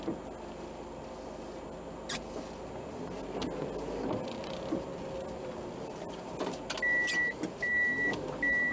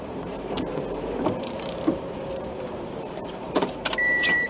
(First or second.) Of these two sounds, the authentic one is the first